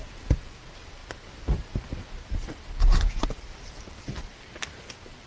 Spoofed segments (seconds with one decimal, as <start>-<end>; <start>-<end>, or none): none